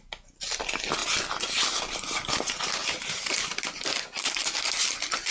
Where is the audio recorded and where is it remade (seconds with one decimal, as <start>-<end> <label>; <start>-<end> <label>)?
0.0-2.8 recorded; 2.8-3.6 remade; 3.6-5.3 recorded